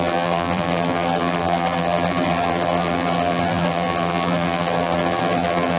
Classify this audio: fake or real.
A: fake